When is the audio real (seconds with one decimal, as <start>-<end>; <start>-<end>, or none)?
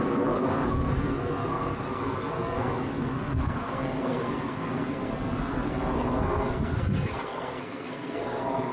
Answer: none